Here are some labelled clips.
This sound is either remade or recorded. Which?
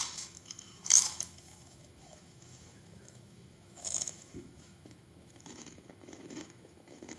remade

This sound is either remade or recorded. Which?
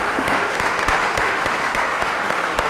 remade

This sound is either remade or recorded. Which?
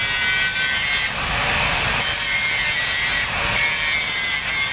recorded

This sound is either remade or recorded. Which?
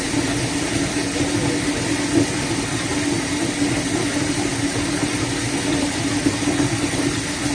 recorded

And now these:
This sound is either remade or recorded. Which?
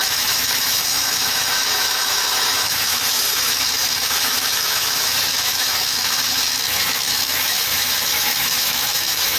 remade